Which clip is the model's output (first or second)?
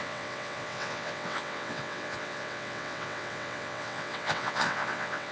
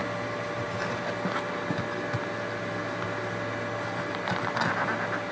first